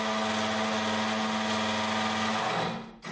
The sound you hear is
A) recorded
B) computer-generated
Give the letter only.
A